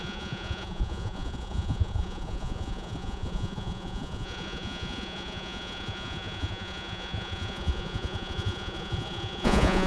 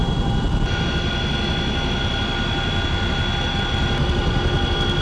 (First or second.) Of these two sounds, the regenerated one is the first